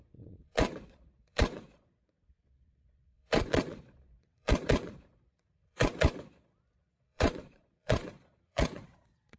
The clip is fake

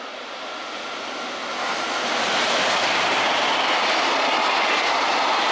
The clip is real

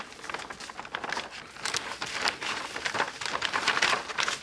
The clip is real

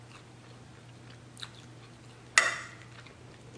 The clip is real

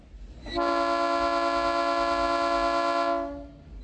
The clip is real